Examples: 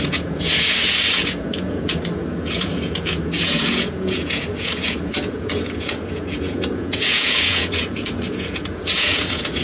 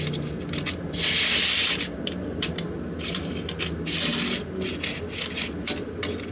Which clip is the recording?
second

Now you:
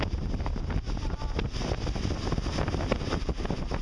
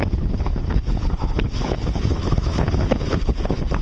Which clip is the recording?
first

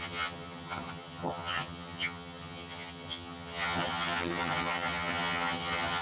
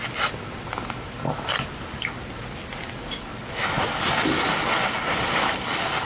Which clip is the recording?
second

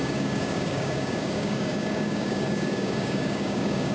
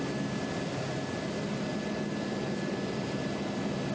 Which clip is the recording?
second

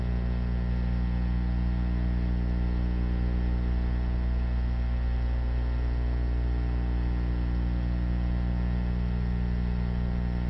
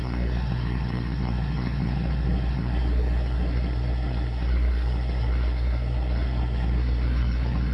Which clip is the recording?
first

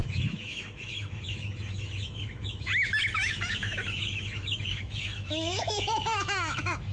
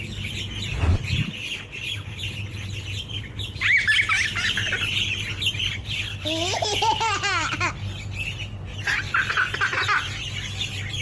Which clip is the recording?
second